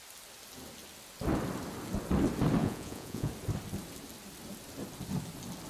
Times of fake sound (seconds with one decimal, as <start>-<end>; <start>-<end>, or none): 2.6-3.3